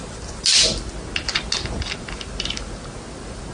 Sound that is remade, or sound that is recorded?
recorded